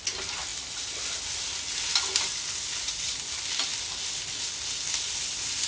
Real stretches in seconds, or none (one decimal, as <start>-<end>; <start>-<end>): 0.0-5.7